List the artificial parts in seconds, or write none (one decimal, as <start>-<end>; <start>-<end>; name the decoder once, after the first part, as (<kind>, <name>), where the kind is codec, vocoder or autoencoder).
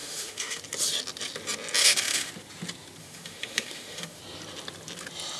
0.0-0.6 (autoencoder, DAC-VAE); 1.8-2.3; 3.0-4.2